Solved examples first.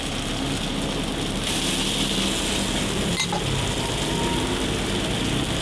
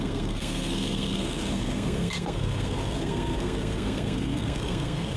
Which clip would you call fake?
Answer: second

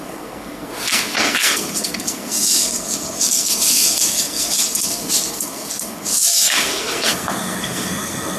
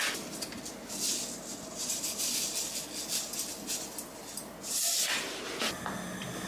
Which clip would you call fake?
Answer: first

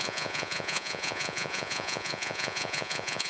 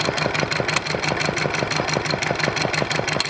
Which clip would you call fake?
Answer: first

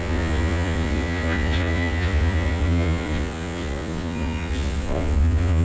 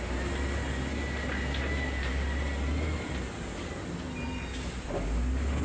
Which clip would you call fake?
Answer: first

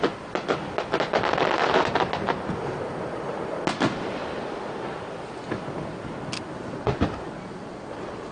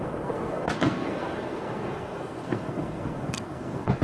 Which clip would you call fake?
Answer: second